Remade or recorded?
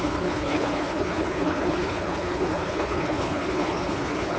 remade